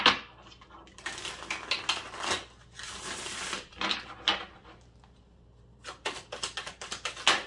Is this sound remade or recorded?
recorded